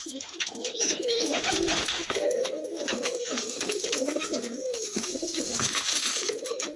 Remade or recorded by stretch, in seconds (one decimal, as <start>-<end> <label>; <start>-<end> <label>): 0.0-6.8 remade

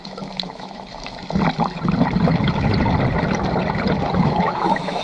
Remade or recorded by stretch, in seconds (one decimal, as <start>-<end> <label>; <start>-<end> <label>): 0.0-1.2 remade; 1.2-4.2 recorded; 4.2-5.0 remade

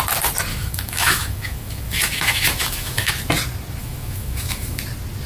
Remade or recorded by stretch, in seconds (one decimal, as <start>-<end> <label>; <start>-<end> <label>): 0.0-0.5 recorded; 0.5-3.1 remade; 3.1-3.8 recorded; 3.8-4.8 remade; 4.8-5.3 recorded

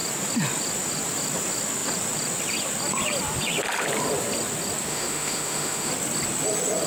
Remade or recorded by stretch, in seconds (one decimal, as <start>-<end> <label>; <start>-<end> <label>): 0.0-4.9 recorded; 4.9-5.9 remade; 5.9-6.9 recorded

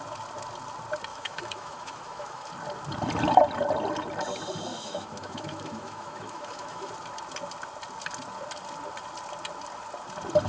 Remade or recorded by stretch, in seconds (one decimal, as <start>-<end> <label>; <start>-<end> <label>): 0.0-1.1 recorded; 1.1-2.5 remade; 2.5-4.7 recorded; 4.7-6.9 remade; 6.9-10.5 recorded

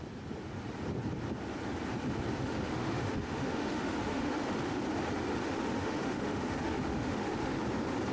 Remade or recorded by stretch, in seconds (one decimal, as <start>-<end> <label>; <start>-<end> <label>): 0.0-2.4 recorded; 2.4-4.8 remade; 4.8-5.4 recorded; 5.4-7.6 remade; 7.6-8.1 recorded